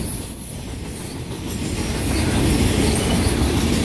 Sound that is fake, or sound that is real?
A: real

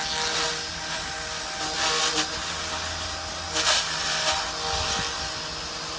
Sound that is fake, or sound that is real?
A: real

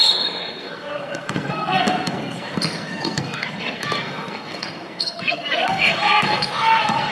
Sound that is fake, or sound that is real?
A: fake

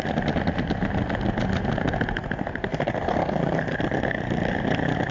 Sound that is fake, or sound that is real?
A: real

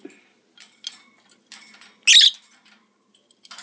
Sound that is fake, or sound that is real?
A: real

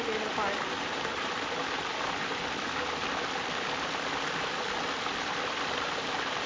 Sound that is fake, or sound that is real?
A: real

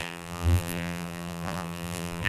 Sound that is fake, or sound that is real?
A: fake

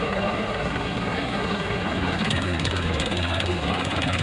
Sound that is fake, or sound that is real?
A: fake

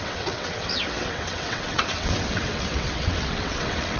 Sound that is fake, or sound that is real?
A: fake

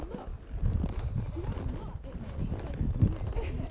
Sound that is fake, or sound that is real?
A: real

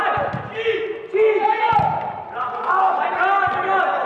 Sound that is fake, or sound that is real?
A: real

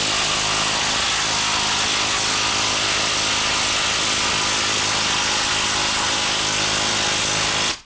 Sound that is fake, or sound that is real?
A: real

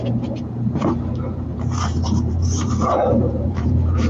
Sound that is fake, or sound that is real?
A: fake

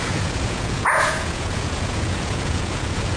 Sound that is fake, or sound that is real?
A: fake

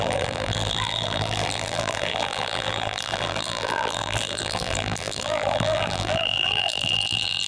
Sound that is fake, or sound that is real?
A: fake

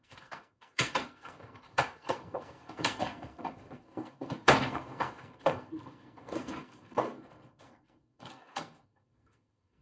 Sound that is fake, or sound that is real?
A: fake